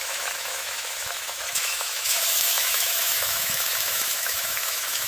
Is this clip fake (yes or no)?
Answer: yes